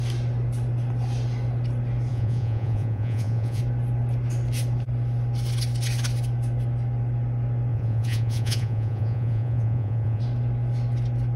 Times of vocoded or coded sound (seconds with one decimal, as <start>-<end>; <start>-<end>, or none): 2.1-3.6; 7.7-10.2